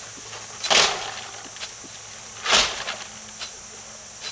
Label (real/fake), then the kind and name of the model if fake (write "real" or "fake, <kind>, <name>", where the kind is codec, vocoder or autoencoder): real